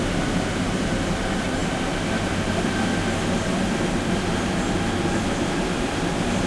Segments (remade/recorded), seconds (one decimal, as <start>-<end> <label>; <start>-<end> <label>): 0.0-6.5 recorded